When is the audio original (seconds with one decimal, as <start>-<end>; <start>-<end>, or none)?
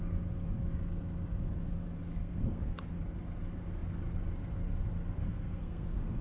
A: 0.0-2.2; 3.0-5.2